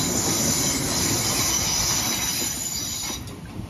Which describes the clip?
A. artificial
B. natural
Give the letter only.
B